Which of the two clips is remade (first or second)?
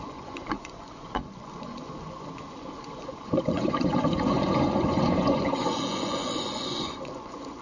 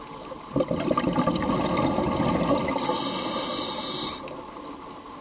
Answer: first